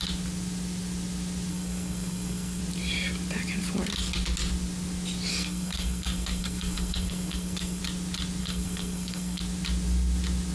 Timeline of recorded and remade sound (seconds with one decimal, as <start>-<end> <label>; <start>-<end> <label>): 0.0-1.5 recorded; 1.5-2.6 remade; 2.6-5.3 recorded; 5.3-7.8 remade; 7.8-8.4 recorded; 8.4-9.4 remade; 9.4-10.5 recorded